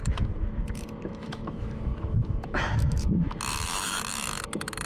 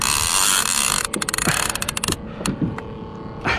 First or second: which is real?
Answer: second